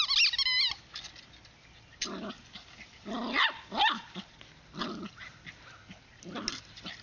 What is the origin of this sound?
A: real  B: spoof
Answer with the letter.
A